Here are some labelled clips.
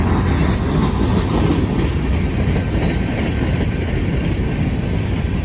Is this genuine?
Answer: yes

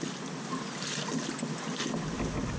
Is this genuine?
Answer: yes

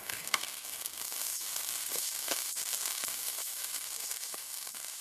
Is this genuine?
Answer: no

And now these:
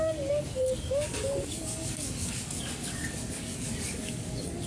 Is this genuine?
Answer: no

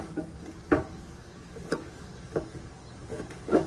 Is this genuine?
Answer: no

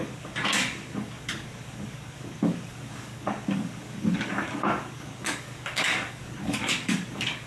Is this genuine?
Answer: no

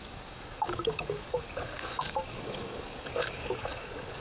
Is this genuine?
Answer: no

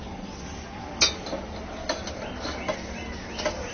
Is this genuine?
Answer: yes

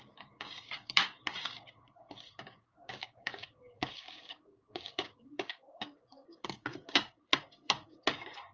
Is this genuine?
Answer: no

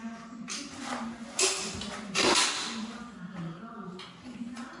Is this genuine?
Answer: yes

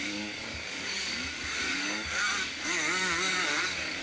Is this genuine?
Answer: no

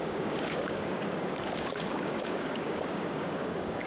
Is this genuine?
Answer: no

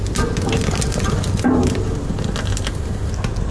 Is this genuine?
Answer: yes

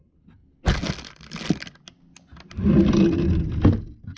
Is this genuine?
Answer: yes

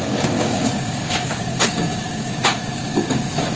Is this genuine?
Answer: no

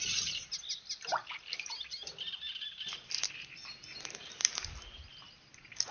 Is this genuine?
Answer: yes